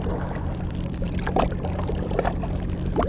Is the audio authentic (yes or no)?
yes